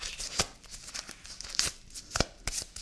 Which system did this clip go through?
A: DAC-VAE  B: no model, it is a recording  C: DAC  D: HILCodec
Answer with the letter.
B